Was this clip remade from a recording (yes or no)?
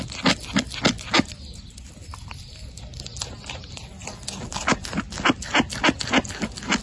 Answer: no